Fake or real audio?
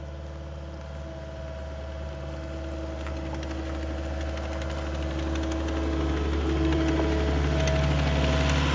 real